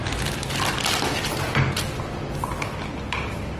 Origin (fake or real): real